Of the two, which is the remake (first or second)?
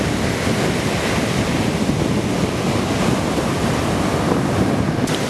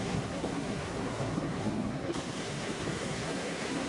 second